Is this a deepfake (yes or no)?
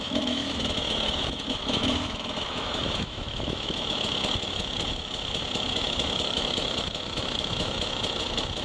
yes